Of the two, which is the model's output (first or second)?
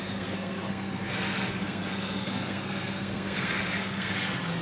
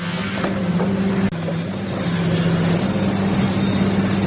first